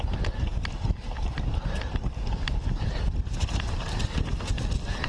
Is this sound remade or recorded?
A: recorded